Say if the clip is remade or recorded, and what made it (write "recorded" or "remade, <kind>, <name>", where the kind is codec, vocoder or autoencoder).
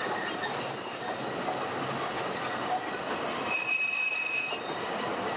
recorded